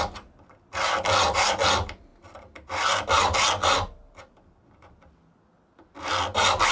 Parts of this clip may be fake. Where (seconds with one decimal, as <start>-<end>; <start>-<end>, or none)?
none